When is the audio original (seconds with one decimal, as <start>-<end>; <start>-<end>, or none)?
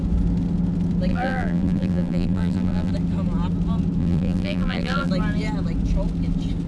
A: 0.0-1.1; 2.9-4.0; 5.1-6.7